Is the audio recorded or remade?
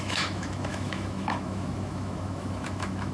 remade